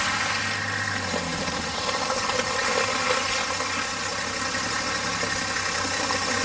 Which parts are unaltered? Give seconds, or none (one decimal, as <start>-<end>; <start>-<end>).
0.0-1.3; 2.7-6.4